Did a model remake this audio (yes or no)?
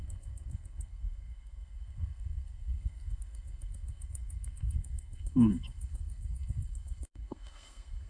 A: yes